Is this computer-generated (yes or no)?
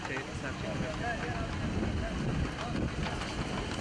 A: no